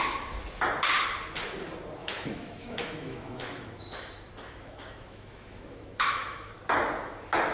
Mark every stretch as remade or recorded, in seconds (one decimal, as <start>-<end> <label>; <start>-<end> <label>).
0.0-2.0 recorded; 2.0-6.5 remade; 6.5-7.5 recorded